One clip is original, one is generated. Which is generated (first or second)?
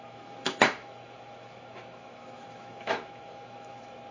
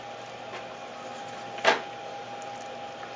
first